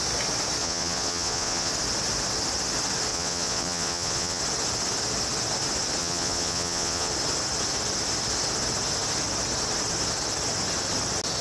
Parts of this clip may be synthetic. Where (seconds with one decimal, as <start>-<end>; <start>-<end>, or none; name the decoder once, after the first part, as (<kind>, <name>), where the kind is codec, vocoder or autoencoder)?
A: 0.6-1.7 (vocoder, Vocos); 3.1-4.4; 6.0-7.1